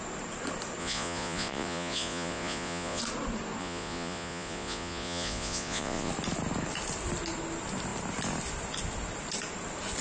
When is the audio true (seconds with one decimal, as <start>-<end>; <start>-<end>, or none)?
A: 0.0-0.8; 3.0-3.6; 6.1-10.0